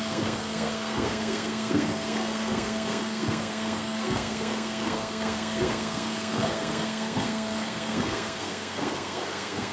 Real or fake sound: fake